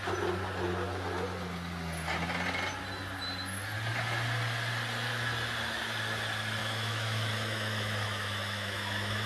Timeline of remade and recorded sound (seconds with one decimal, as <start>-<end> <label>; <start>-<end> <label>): 0.0-6.6 recorded; 6.6-9.3 remade